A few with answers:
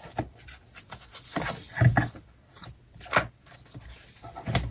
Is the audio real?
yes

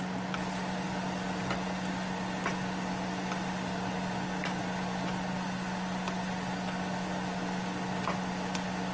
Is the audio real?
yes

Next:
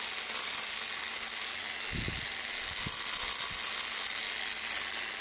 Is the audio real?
yes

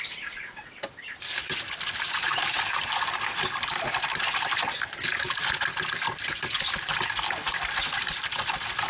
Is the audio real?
yes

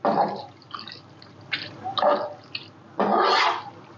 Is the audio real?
yes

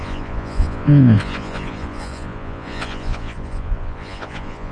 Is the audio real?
no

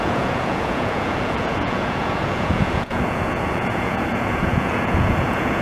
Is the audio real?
no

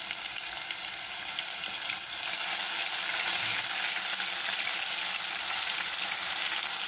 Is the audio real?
yes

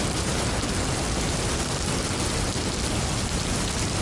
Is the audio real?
yes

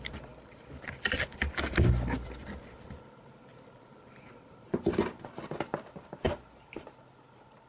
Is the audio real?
yes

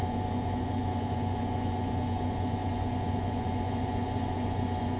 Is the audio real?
no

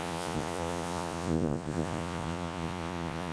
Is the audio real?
no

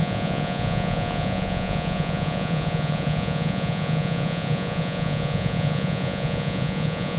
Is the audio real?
no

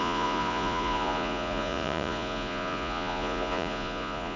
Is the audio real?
no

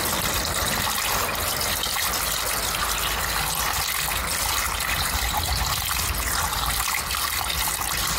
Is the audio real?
yes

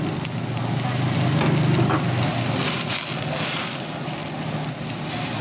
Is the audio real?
yes